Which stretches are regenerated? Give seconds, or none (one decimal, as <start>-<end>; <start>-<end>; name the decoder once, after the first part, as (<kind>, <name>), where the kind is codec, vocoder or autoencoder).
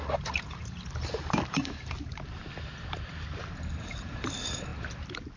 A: 0.0-2.4 (vocoder, BigVGAN v2); 3.8-4.7